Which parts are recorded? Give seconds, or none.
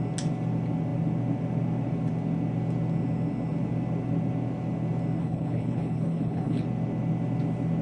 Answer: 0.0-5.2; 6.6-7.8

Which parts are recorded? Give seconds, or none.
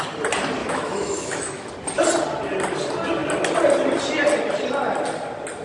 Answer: 0.0-0.6; 1.7-5.6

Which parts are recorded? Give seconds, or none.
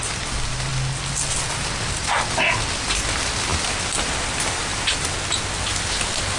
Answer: 0.0-3.5; 5.1-6.4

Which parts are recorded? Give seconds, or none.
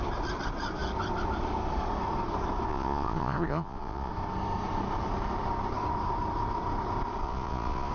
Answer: 0.0-2.7; 4.1-7.2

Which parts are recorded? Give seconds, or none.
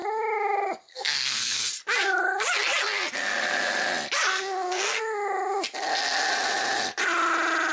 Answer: 0.0-0.9; 1.7-4.3; 5.0-7.7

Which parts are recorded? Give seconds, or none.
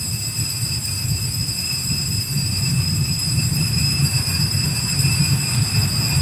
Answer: 0.0-6.2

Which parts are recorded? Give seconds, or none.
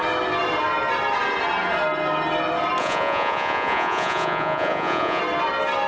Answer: 0.0-2.8; 5.2-5.9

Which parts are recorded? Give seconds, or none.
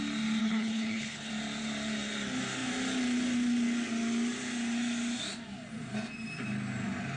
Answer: 0.0-0.4; 1.3-7.2